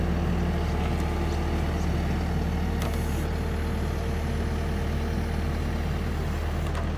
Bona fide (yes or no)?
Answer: yes